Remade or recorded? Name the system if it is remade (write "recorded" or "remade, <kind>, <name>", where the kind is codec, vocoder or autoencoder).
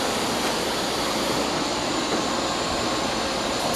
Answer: recorded